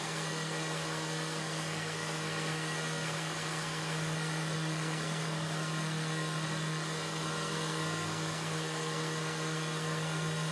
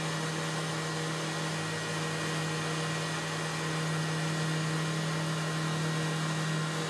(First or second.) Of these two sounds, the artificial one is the first